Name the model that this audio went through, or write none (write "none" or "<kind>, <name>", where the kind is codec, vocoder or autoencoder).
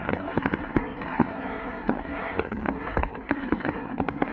codec, SNAC